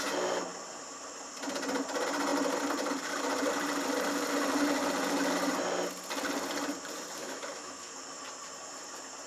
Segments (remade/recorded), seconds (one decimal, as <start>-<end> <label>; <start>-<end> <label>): 0.0-7.2 recorded; 7.2-7.9 remade; 7.9-9.3 recorded